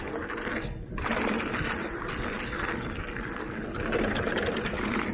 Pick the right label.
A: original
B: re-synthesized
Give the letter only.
A